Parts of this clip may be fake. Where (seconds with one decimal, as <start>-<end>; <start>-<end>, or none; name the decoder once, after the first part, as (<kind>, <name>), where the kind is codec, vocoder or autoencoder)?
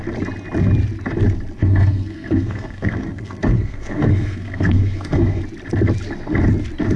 1.6-5.4 (codec, SNAC)